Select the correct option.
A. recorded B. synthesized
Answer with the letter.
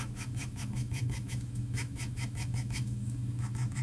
B